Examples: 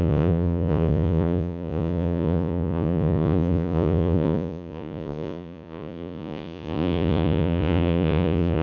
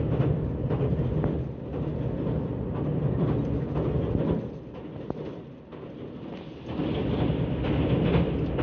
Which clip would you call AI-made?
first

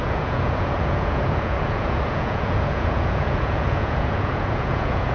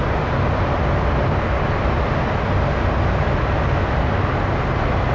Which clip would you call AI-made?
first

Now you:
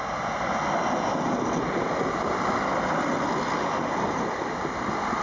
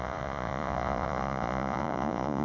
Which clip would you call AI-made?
second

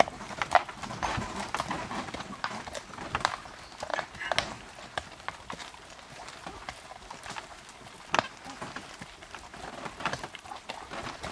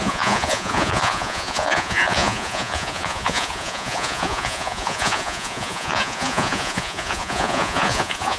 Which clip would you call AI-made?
second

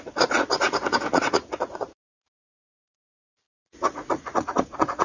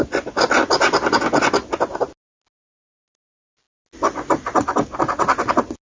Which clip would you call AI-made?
first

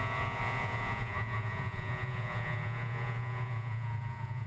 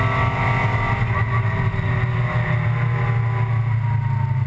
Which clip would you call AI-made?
first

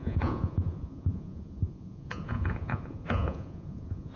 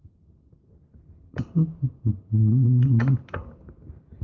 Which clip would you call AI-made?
first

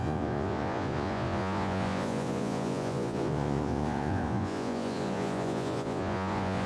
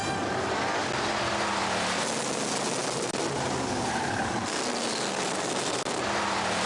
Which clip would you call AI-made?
first